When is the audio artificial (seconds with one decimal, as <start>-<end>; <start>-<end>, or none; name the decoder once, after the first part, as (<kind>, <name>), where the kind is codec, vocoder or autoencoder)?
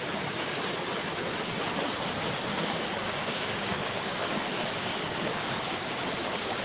2.5-6.6 (codec, DAC)